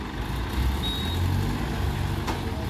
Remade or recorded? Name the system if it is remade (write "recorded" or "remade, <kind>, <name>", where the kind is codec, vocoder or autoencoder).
recorded